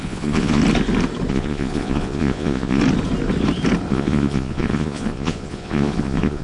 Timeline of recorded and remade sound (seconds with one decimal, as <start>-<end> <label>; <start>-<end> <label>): 0.0-0.6 remade; 0.6-1.3 recorded; 1.3-2.8 remade; 2.8-3.9 recorded; 3.9-6.4 remade